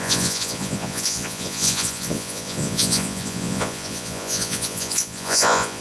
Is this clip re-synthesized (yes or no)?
yes